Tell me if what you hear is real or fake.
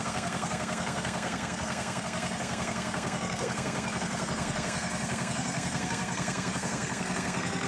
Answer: fake